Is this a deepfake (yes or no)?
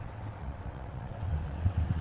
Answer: yes